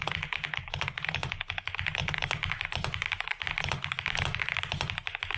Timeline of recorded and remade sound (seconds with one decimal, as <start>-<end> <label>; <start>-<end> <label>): 0.0-5.4 recorded